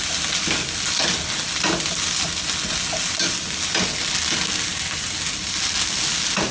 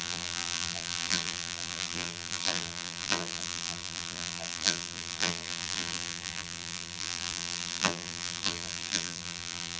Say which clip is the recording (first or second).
first